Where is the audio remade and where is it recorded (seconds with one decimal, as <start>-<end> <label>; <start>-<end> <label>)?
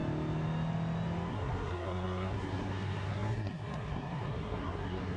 0.0-1.3 recorded; 1.3-5.2 remade